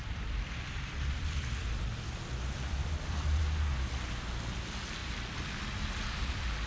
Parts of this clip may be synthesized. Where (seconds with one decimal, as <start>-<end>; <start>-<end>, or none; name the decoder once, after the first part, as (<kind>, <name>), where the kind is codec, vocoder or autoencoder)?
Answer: 0.0-3.4 (vocoder, BigVGAN v2); 5.0-6.7